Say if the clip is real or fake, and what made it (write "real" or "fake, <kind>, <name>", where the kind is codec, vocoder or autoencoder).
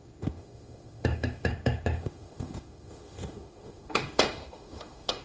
fake, autoencoder, DAC-VAE